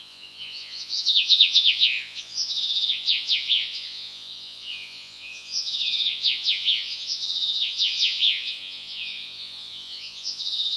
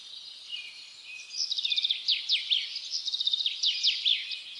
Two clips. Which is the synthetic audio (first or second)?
first